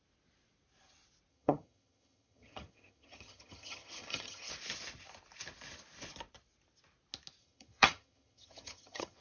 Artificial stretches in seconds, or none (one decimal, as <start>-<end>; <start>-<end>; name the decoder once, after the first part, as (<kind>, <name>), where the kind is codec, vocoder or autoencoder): 1.3-4.5 (vocoder, HiFi-GAN); 7.4-9.2